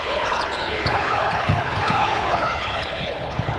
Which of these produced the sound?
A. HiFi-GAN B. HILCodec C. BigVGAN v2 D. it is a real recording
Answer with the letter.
B